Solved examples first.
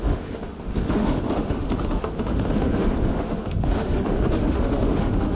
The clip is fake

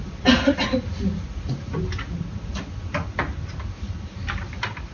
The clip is real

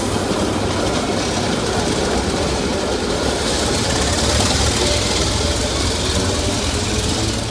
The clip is real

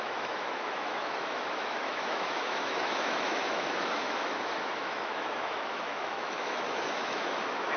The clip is fake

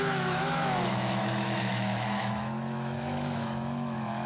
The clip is fake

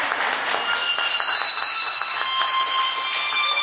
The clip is real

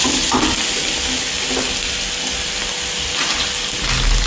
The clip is real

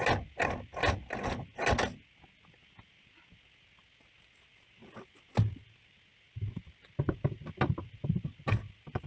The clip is real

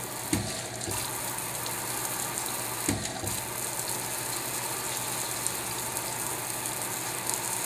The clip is real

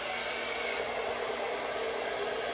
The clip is real